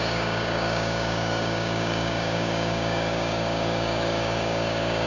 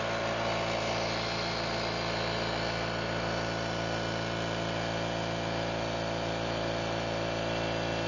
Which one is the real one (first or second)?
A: second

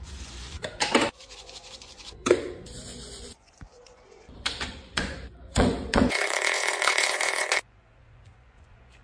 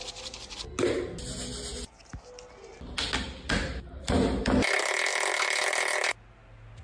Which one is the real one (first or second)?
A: second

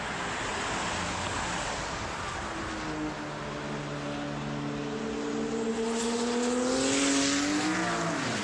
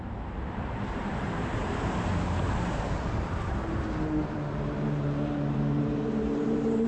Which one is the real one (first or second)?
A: first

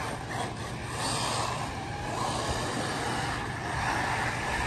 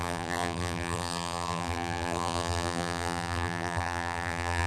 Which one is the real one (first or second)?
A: first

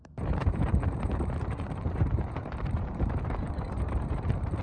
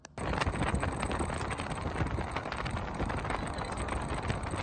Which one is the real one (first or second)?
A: second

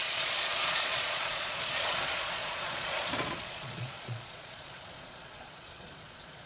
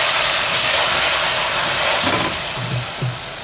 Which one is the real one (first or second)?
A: second